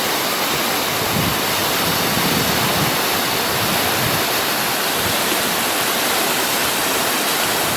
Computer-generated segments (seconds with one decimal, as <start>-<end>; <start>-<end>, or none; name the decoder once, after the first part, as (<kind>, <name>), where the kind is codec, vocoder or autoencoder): 0.0-6.6 (vocoder, BigVGAN v2)